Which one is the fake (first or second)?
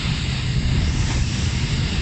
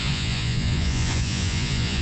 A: second